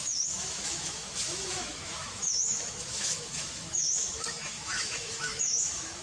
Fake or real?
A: fake